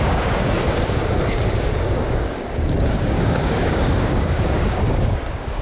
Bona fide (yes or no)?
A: no